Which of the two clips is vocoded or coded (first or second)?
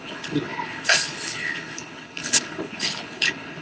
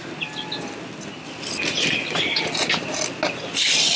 first